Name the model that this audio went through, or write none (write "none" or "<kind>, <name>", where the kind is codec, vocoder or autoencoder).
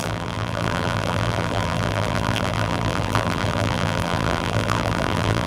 vocoder, BigVGAN v2